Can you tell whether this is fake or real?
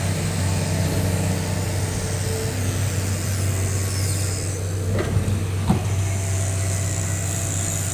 real